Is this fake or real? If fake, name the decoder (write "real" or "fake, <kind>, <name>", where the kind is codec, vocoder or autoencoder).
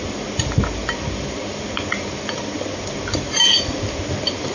real